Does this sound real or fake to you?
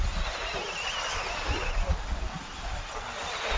real